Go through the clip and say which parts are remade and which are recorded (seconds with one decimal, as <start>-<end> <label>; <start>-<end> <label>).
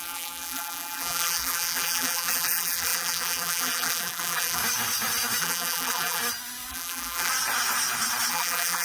0.0-4.6 remade; 4.6-5.4 recorded; 5.4-6.2 remade; 6.2-6.7 recorded; 6.7-7.3 remade; 7.3-8.3 recorded; 8.3-8.8 remade